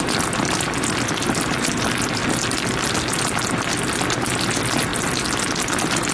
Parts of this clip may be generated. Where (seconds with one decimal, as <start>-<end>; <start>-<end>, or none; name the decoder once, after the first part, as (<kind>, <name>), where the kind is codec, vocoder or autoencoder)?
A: 2.2-3.2 (vocoder, BigVGAN v2)